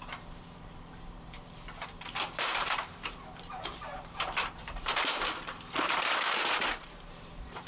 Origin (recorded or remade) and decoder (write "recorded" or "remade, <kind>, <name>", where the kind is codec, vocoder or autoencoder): remade, vocoder, BigVGAN v2